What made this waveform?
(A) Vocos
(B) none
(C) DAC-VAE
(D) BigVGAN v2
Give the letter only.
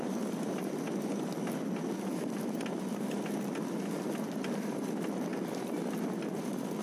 B